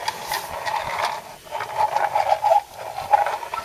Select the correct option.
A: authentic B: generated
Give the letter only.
A